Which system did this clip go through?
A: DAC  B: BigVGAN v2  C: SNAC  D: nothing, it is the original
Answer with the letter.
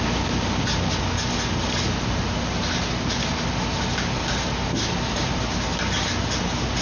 D